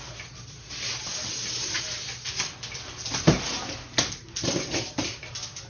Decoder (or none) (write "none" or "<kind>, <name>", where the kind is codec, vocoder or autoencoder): none